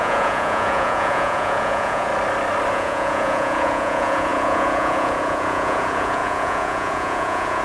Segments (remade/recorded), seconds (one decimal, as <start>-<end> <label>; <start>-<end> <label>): 0.0-2.1 remade; 2.1-2.7 recorded; 2.7-7.6 remade